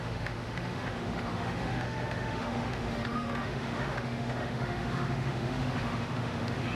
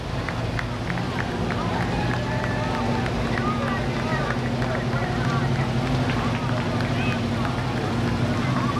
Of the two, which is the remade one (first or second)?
first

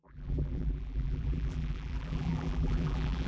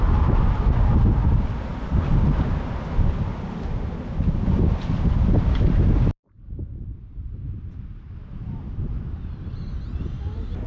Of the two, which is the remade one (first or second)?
first